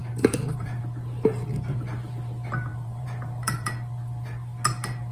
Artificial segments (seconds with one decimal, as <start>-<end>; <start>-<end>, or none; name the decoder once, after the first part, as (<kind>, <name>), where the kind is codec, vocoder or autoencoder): 0.0-0.8 (vocoder, BigVGAN v2); 2.7-3.7